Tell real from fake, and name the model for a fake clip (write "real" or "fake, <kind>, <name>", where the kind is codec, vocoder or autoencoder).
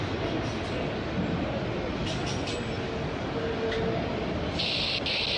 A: real